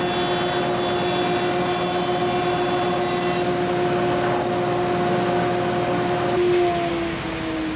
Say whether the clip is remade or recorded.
recorded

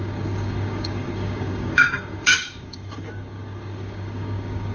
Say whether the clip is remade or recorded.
remade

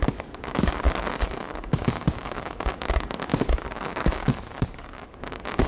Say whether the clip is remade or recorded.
remade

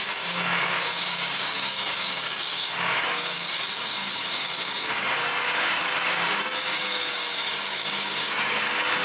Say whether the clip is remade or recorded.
remade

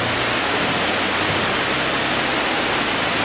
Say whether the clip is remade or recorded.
recorded